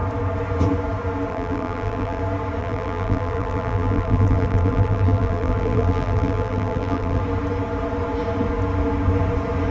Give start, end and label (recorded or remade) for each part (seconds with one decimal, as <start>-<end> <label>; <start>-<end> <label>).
0.0-1.3 recorded; 1.3-2.2 remade; 2.2-2.6 recorded; 2.6-7.2 remade; 7.2-9.7 recorded